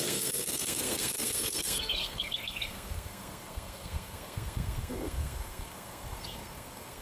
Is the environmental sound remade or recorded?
remade